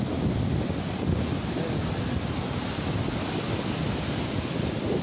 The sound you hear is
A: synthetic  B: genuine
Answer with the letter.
B